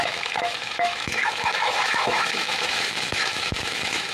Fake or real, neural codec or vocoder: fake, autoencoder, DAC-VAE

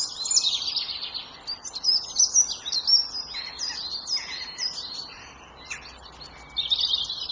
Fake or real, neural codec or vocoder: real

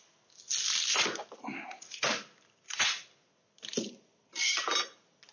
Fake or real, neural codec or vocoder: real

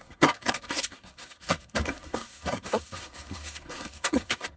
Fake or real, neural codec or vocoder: fake, codec, SNAC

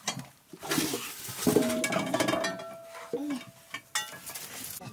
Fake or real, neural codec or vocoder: real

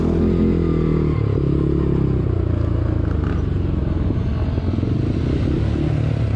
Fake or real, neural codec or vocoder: real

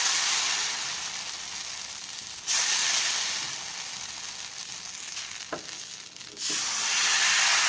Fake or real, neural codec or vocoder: real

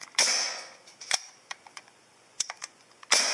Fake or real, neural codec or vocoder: fake, vocoder, Vocos